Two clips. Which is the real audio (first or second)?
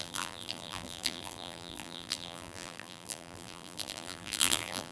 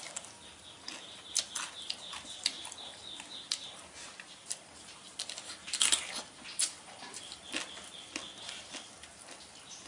second